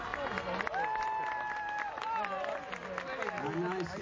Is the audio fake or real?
real